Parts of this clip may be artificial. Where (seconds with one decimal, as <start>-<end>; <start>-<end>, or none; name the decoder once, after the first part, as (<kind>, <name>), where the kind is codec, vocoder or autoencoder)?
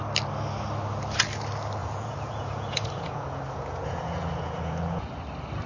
1.8-5.1 (vocoder, Vocos)